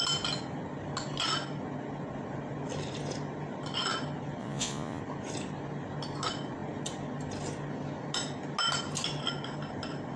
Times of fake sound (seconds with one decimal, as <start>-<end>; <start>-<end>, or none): 4.4-5.0